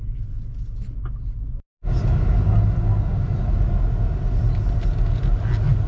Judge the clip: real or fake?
real